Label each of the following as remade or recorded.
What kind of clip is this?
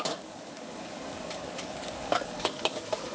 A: remade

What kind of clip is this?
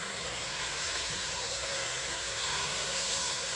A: remade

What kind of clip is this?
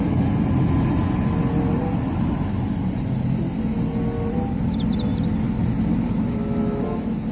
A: recorded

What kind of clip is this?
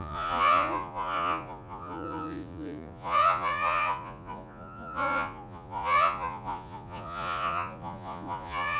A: remade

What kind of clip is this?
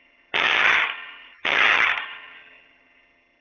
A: remade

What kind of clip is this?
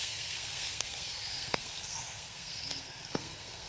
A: remade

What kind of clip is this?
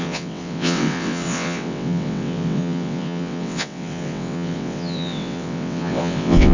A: remade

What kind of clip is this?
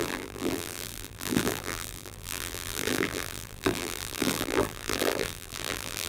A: remade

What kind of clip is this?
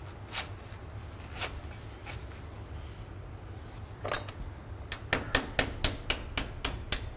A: recorded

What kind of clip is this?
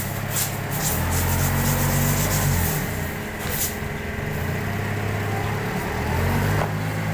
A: recorded